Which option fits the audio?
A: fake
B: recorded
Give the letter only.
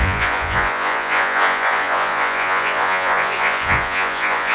A